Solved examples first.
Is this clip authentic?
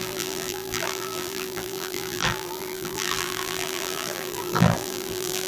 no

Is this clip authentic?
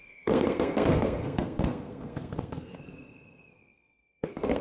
no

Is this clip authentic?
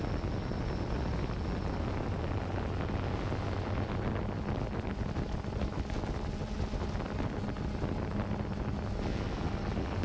yes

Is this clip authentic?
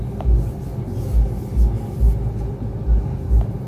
yes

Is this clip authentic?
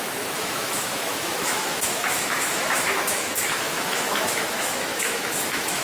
no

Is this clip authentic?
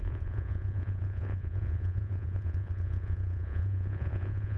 no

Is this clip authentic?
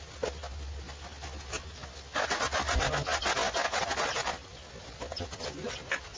yes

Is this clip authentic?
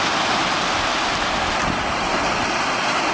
yes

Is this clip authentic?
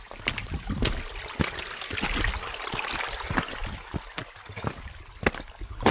yes